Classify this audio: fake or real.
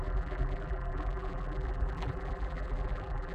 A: fake